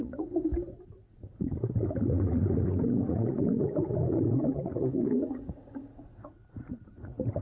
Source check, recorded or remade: remade